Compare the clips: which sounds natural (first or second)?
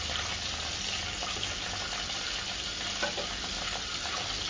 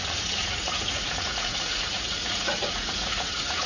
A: first